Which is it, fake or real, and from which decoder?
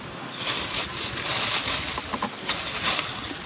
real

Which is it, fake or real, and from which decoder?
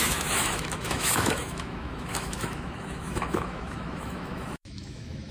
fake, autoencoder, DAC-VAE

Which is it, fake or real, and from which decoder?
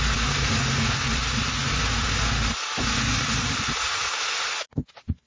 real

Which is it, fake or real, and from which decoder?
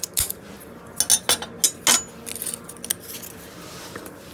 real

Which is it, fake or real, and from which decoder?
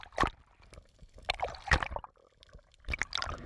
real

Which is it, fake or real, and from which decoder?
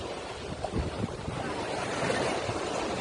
fake, vocoder, BigVGAN v2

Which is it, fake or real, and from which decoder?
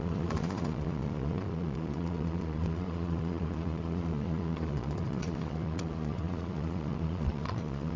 fake, vocoder, Vocos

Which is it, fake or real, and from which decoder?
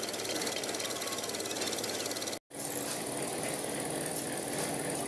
real